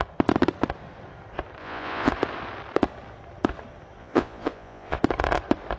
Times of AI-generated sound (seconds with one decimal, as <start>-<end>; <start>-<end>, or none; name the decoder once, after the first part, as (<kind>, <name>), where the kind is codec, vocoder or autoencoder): 1.6-2.1 (vocoder, Vocos); 4.0-5.0